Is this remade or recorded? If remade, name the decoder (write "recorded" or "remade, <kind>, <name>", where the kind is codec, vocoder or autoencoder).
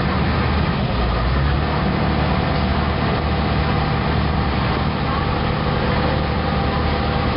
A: recorded